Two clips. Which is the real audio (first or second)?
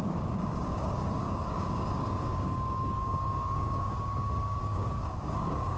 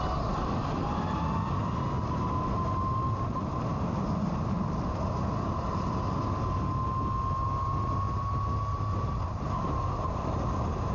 second